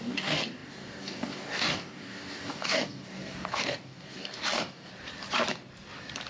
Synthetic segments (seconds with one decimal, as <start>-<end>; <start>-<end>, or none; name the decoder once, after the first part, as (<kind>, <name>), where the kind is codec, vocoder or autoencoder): 0.0-4.9 (codec, DAC)